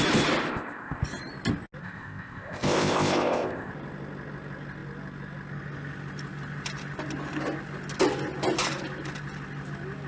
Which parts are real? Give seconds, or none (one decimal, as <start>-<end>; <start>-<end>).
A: 0.0-0.5; 1.0-1.8; 3.7-10.1